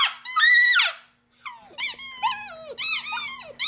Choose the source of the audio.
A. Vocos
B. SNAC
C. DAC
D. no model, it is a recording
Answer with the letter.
D